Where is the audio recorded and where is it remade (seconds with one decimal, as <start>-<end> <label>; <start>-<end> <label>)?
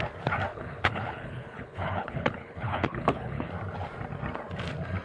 0.0-0.5 recorded; 0.5-3.5 remade; 3.5-5.0 recorded